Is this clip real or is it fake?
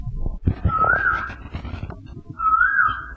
real